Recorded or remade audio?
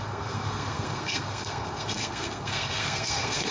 remade